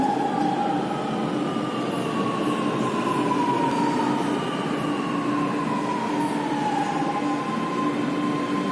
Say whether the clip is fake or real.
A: real